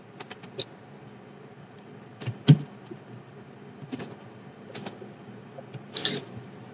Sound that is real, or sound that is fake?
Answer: real